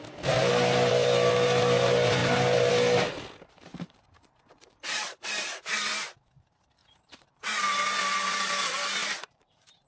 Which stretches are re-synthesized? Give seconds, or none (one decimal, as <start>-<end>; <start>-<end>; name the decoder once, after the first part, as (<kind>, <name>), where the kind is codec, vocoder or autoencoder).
3.7-5.9 (vocoder, BigVGAN v2); 6.8-7.6; 9.0-9.9